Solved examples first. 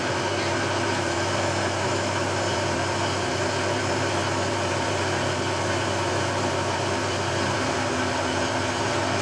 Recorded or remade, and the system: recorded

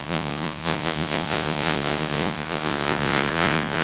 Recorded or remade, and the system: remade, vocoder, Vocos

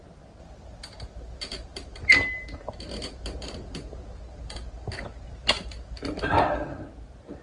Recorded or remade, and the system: recorded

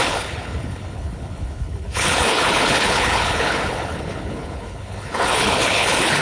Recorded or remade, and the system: remade, codec, HILCodec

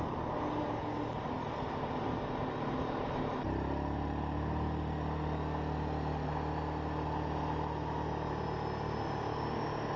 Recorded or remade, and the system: recorded